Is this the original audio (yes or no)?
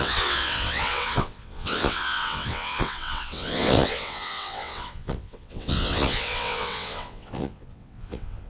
no